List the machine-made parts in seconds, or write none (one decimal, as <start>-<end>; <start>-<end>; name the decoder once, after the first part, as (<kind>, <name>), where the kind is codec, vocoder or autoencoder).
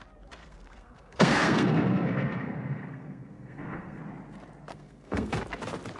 0.4-4.0 (codec, SNAC); 4.7-5.4